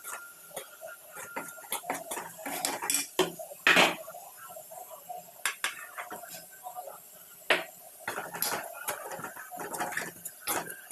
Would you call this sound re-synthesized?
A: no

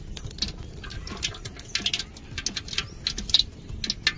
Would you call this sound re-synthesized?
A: no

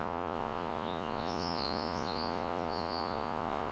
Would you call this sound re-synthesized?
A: yes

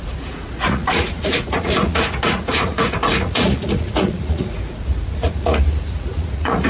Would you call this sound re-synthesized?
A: yes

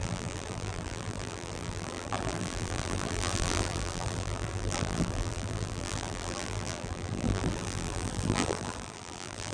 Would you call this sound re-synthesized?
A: yes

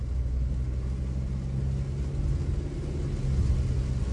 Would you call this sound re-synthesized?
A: no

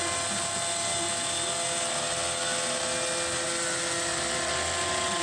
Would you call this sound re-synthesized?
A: no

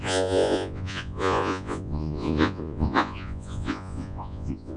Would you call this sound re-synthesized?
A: yes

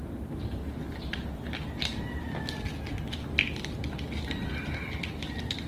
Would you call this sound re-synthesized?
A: no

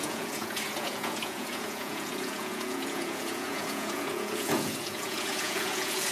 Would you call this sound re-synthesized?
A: yes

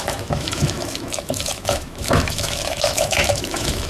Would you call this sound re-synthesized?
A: yes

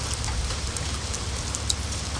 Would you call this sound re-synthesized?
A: no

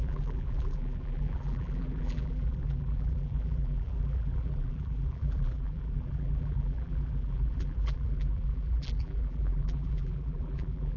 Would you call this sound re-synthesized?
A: yes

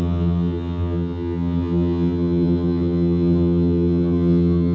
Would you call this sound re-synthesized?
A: yes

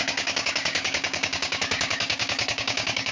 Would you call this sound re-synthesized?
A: yes